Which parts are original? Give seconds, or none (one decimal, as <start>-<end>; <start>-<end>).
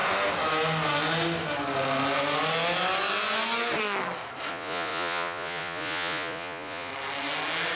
0.0-4.5; 6.9-7.8